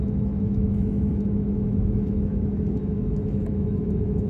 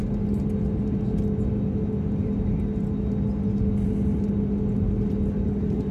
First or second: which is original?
second